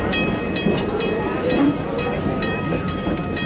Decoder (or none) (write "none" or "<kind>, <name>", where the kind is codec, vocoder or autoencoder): vocoder, BigVGAN v2